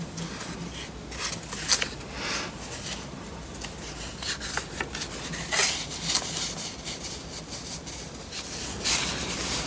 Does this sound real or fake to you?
real